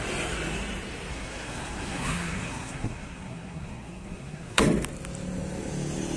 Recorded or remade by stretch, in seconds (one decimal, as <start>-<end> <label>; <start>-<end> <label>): 0.0-1.1 recorded; 1.1-4.6 remade; 4.6-6.2 recorded

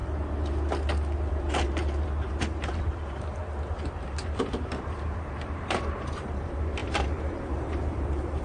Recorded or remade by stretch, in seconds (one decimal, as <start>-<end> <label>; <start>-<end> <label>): 0.0-1.3 recorded; 1.3-3.4 remade; 3.4-4.4 recorded; 4.4-8.4 remade

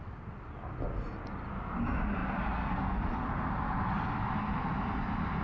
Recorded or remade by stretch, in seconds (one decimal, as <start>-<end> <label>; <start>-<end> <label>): 0.0-5.4 recorded

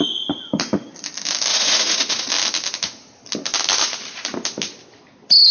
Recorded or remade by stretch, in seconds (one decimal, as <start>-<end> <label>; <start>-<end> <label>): 0.0-1.5 recorded; 1.5-2.3 remade; 2.3-5.5 recorded

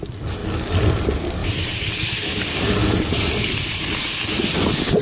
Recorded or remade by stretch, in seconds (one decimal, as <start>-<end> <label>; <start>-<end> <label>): 0.0-1.4 recorded; 1.4-2.3 remade; 2.3-2.8 recorded; 2.8-3.9 remade; 3.9-5.0 recorded

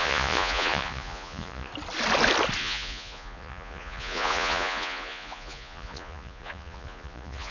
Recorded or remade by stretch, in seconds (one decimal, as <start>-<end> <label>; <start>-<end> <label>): 0.0-1.7 remade; 1.7-2.6 recorded; 2.6-7.5 remade

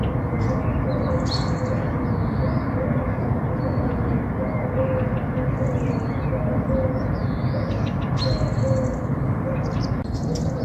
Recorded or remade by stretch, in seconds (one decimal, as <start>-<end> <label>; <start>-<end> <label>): 0.0-10.6 recorded